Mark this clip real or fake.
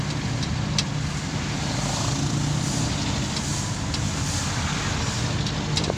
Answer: real